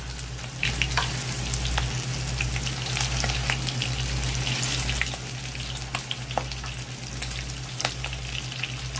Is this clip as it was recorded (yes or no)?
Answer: yes